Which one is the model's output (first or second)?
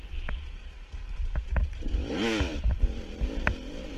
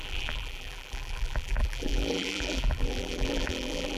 second